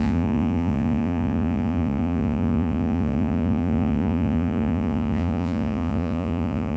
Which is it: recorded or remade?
remade